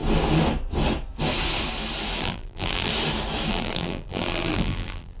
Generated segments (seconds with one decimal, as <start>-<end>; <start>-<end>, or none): 2.2-2.9; 3.5-5.2